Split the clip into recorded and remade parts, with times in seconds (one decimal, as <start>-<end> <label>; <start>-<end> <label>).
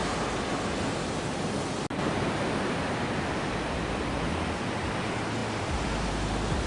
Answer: 0.0-6.7 recorded